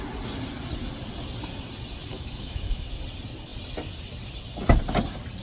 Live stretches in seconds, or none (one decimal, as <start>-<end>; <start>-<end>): 0.0-2.1; 2.9-5.4